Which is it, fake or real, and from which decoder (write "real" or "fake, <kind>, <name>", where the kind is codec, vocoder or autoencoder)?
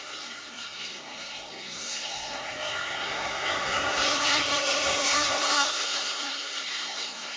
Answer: fake, codec, SNAC